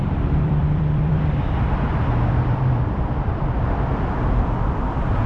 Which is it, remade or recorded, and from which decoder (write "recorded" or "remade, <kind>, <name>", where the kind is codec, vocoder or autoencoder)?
remade, vocoder, BigVGAN v2